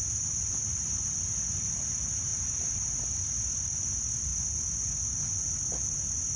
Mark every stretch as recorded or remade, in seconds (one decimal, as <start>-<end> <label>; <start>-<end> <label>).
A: 0.0-0.5 recorded; 0.5-1.0 remade; 1.0-2.3 recorded; 2.3-2.8 remade; 2.8-6.4 recorded